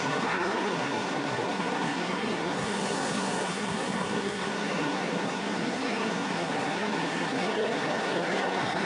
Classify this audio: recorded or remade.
remade